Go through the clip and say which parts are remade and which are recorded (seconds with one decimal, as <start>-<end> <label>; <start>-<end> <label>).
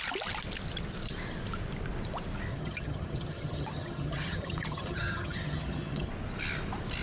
0.0-2.5 recorded; 2.5-6.1 remade; 6.1-7.0 recorded